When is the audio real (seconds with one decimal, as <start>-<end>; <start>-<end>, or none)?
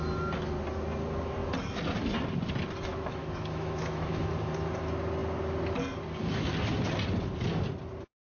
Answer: 0.0-2.9; 4.3-8.3